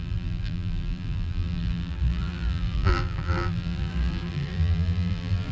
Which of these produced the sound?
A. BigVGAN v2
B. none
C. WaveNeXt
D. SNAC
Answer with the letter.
A